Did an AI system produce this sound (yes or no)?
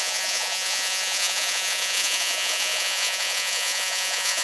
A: yes